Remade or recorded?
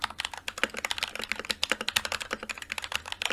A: recorded